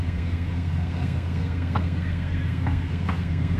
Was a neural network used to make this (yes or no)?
yes